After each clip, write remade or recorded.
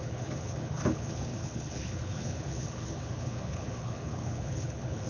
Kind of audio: remade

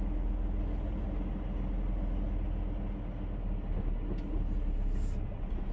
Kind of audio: recorded